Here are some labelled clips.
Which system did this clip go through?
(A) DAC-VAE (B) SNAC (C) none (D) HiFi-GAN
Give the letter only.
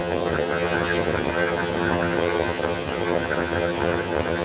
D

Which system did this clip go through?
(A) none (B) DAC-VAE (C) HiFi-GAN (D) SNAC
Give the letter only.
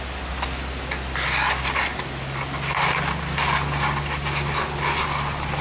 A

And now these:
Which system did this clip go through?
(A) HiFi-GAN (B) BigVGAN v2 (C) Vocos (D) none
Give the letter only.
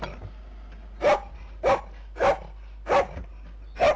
D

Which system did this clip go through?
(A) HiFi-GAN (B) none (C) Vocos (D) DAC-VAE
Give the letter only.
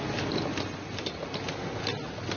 B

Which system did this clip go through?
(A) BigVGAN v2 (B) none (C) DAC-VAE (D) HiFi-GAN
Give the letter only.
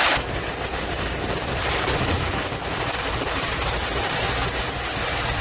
B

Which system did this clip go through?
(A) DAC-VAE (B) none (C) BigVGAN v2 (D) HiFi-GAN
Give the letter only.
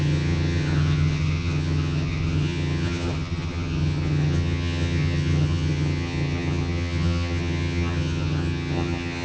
D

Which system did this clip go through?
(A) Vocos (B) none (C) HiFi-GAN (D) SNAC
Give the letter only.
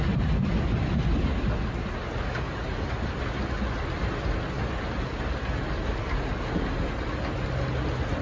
B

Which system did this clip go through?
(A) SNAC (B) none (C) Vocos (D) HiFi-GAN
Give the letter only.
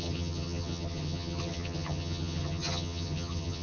D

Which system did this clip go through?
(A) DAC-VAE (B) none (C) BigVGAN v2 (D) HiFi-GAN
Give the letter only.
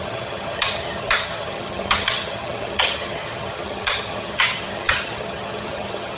D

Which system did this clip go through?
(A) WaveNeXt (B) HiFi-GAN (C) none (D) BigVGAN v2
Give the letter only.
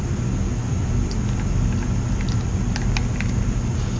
C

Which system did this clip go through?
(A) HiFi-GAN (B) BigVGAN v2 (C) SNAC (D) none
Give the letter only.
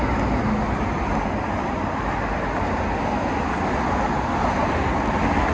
D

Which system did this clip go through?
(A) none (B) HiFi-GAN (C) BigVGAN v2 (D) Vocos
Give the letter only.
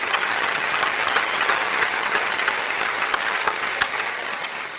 B